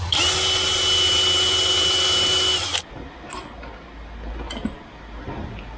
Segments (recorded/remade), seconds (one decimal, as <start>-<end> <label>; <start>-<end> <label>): 0.0-5.8 recorded